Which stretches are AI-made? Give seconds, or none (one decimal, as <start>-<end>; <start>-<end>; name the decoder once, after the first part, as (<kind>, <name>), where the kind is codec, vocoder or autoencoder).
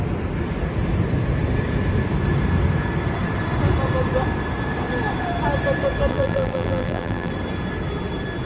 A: 6.1-7.3 (vocoder, BigVGAN v2)